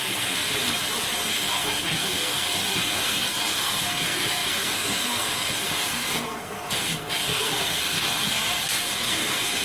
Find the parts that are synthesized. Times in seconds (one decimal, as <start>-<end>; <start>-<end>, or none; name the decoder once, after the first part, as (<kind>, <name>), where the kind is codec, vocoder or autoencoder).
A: 0.0-0.6 (codec, SNAC); 1.3-9.6